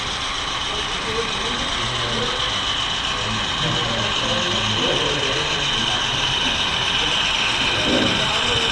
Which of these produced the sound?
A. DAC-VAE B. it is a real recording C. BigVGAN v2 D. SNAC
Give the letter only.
B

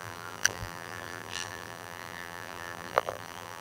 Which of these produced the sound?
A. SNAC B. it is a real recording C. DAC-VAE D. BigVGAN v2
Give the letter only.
D